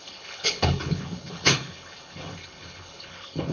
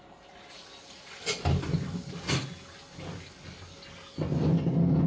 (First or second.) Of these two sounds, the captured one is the second